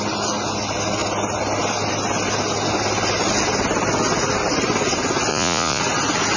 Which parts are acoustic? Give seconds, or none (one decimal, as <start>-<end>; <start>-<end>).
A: 0.0-5.3; 5.8-6.4